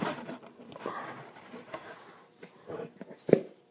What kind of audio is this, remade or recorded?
remade